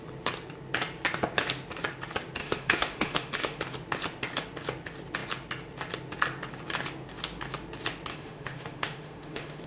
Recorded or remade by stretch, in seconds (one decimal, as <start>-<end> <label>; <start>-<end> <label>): 0.0-2.4 recorded; 2.4-3.6 remade; 3.6-8.1 recorded; 8.1-9.7 remade